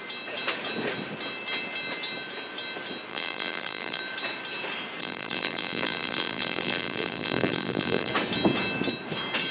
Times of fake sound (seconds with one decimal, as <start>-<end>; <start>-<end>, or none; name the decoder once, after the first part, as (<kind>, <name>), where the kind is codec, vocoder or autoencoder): 3.1-4.0 (vocoder, BigVGAN v2); 5.0-8.1

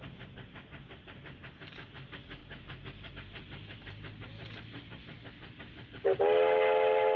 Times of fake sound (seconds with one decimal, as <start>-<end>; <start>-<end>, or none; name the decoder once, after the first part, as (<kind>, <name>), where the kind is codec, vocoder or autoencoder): 2.4-3.1 (vocoder, BigVGAN v2); 4.2-5.0

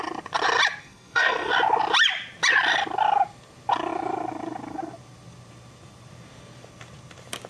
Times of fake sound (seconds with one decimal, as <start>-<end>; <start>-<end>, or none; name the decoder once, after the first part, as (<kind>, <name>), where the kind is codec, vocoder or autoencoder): 0.8-1.5 (codec, SNAC)

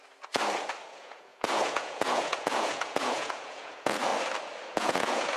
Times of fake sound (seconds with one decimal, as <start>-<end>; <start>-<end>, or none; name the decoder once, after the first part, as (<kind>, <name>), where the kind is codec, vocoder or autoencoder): 0.9-4.1 (vocoder, Vocos); 4.7-5.4

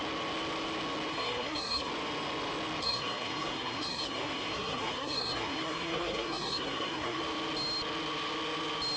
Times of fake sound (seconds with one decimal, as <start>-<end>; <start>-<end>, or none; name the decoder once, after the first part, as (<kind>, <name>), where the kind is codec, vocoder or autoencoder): 1.1-1.9 (codec, SNAC); 2.8-7.2

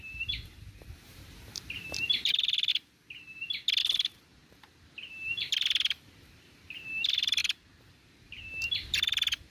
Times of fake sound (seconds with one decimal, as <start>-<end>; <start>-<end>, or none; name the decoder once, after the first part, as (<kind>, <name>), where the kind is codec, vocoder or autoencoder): 0.0-2.7 (vocoder, BigVGAN v2); 3.8-9.5